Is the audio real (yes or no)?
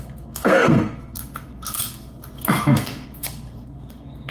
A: no